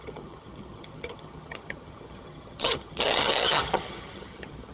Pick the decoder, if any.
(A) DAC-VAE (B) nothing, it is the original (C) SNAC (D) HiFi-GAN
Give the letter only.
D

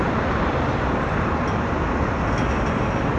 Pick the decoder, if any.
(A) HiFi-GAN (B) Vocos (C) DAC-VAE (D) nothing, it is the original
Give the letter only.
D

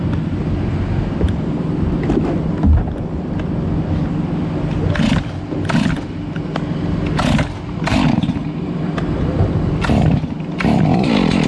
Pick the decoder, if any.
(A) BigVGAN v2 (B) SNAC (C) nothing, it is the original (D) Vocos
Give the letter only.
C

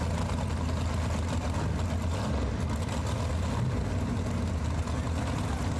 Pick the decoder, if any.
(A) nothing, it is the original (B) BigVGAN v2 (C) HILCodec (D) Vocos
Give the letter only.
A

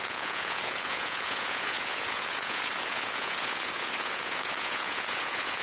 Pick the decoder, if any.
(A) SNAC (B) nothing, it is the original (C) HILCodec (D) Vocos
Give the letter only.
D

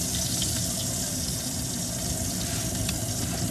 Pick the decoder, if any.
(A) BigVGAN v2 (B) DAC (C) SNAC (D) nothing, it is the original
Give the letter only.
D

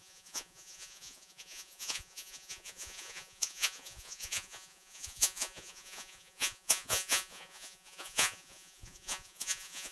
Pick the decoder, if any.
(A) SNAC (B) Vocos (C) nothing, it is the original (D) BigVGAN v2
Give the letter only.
B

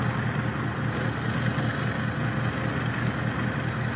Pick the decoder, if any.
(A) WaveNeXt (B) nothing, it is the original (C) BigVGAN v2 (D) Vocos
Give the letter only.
B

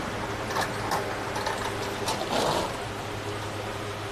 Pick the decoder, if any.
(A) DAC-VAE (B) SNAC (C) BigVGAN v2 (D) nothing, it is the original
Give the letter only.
D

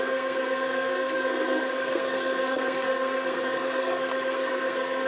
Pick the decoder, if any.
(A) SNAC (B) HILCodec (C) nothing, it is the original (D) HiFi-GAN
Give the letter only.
A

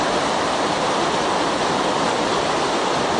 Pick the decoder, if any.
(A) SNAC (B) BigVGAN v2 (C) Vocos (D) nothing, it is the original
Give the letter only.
D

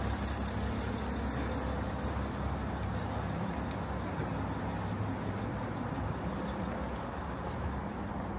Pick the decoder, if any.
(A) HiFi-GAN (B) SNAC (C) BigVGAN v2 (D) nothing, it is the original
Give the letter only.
D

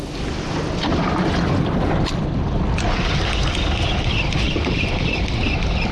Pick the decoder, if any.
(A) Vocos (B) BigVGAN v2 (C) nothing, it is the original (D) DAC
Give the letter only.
C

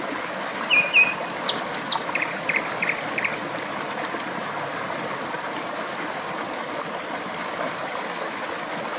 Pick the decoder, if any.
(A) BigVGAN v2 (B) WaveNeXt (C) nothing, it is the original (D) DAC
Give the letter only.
C